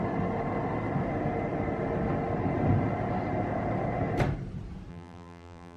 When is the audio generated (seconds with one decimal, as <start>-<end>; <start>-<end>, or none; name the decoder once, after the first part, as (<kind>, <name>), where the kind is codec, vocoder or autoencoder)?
4.9-5.8 (vocoder, BigVGAN v2)